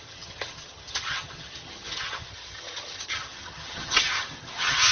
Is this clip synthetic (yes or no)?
yes